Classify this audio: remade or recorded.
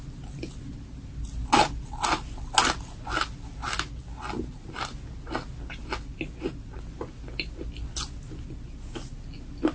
recorded